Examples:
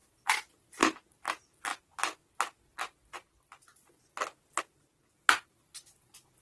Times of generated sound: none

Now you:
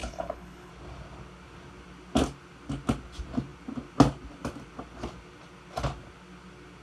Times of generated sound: 0.0-0.7 (codec, HILCodec)

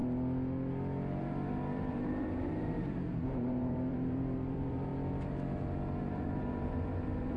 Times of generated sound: 1.2-4.9 (vocoder, BigVGAN v2); 6.0-7.4